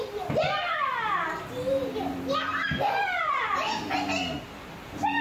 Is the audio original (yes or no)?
yes